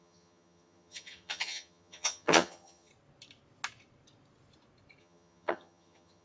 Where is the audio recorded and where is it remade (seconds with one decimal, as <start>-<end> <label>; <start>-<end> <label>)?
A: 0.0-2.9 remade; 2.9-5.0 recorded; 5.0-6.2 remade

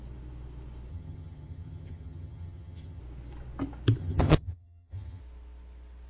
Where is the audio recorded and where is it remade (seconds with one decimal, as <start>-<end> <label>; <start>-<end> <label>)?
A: 0.0-0.9 recorded; 0.9-3.0 remade; 3.0-4.0 recorded; 4.0-5.2 remade; 5.2-6.1 recorded

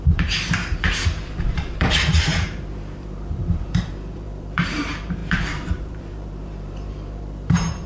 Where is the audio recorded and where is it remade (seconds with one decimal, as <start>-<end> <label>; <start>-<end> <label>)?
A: 0.0-7.9 remade